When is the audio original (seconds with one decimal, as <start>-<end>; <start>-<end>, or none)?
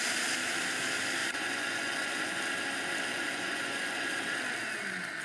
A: 0.0-1.2; 2.4-3.1; 4.2-5.2